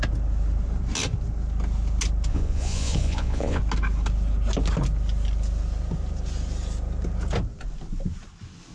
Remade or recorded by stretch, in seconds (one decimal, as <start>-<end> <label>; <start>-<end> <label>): 0.0-2.3 recorded; 2.3-3.6 remade; 3.6-8.7 recorded